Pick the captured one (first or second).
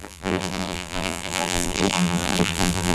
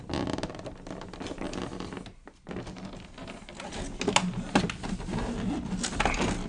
second